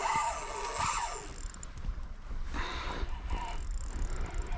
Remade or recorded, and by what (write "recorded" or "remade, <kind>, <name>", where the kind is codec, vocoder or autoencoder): recorded